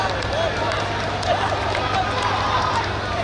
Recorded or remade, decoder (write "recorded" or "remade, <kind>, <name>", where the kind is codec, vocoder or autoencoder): recorded